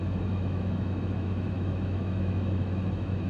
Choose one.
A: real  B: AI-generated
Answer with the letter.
B